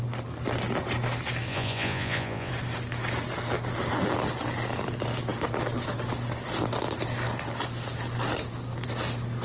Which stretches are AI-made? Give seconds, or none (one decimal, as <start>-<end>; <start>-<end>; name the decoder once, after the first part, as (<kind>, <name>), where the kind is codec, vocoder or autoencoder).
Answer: 1.5-2.5 (vocoder, Vocos)